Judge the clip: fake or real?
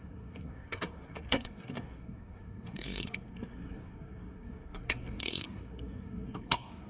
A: fake